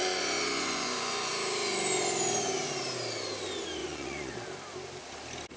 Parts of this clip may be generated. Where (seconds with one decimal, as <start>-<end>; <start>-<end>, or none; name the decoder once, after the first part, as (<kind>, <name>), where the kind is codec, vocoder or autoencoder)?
0.0-1.3 (vocoder, Vocos); 3.8-4.3